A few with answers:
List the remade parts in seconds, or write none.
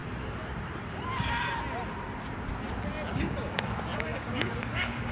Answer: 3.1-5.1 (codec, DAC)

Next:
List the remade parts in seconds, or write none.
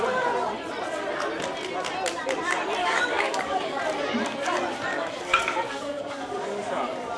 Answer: 2.8-3.8 (codec, DAC); 4.9-7.2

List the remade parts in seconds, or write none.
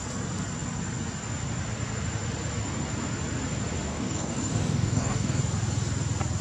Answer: 3.9-5.4 (codec, DAC)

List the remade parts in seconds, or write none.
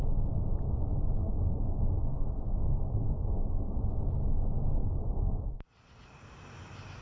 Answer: 1.2-3.8 (codec, DAC); 4.8-5.6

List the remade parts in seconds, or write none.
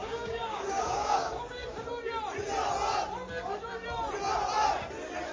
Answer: 0.0-1.8 (codec, DAC)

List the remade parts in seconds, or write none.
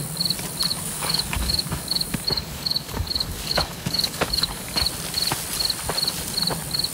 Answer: 0.7-4.8 (codec, DAC)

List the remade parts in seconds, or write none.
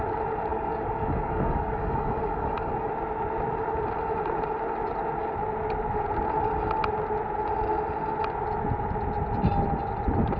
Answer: 0.5-2.9 (codec, DAC)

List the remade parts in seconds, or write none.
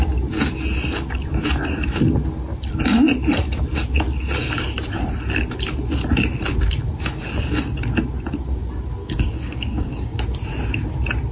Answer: 9.0-10.2 (codec, DAC)